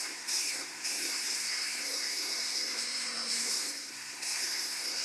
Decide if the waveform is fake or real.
fake